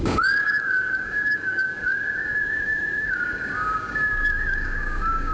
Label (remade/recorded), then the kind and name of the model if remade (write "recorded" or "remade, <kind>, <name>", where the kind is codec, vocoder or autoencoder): remade, codec, DAC